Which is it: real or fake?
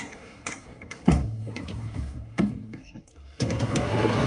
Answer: fake